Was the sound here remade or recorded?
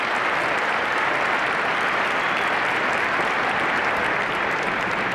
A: recorded